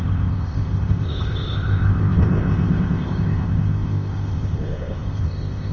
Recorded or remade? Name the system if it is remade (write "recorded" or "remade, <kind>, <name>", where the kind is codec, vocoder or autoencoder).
remade, codec, ZipCodec